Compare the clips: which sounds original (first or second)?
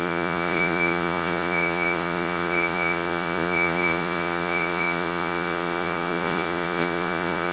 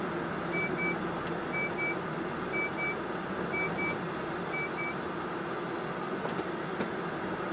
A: second